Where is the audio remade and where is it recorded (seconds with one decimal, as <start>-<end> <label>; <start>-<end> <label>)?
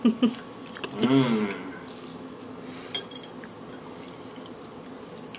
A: 0.0-2.1 recorded; 2.1-2.6 remade; 2.6-5.4 recorded